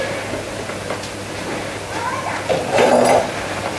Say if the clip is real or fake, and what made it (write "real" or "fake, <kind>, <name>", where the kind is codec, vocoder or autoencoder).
real